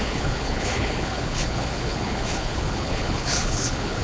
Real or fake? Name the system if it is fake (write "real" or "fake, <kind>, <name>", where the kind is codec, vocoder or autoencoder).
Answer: fake, codec, HILCodec